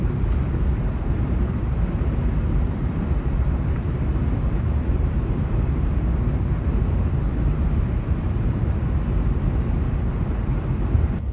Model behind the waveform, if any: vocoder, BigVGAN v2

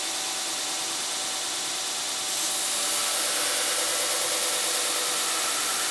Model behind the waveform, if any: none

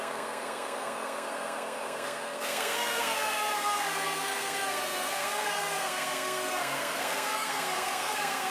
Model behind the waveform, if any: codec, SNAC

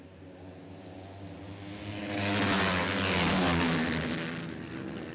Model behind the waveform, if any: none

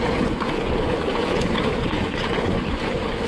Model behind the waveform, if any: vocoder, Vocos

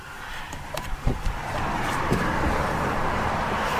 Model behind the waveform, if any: vocoder, BigVGAN v2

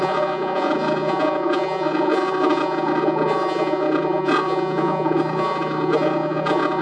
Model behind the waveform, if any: vocoder, Vocos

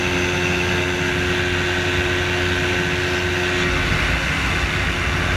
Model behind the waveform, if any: none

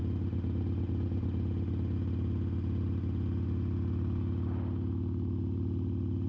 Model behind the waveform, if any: none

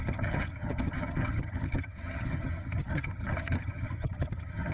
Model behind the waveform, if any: vocoder, HiFi-GAN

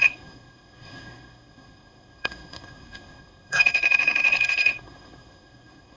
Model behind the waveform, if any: codec, SNAC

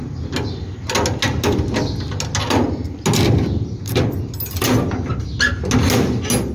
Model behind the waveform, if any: none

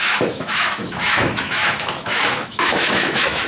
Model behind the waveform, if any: autoencoder, DAC-VAE